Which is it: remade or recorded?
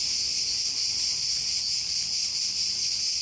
recorded